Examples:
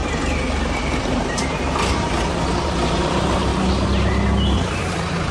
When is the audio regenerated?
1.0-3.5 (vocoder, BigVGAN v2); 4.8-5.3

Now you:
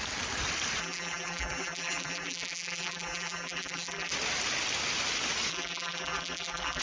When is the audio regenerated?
0.8-4.1 (vocoder, BigVGAN v2); 5.5-6.8